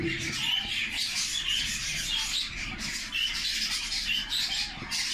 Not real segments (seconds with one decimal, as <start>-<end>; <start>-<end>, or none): none